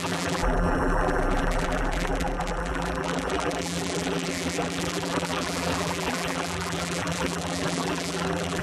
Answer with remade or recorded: remade